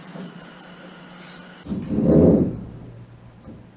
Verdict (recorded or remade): recorded